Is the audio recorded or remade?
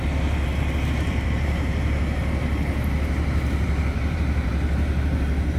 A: remade